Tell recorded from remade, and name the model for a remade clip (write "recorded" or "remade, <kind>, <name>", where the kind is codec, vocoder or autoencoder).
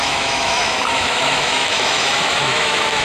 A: remade, autoencoder, DAC-VAE